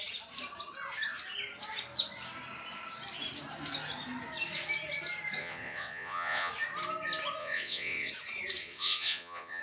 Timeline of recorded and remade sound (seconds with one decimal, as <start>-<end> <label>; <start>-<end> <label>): 0.0-5.4 recorded; 5.4-6.5 remade; 6.5-7.4 recorded; 7.4-8.1 remade; 8.1-8.6 recorded; 8.6-9.6 remade